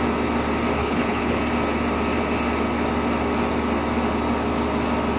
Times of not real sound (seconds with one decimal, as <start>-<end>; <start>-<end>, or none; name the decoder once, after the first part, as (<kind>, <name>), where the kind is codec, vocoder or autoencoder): 0.8-1.4 (codec, HILCodec)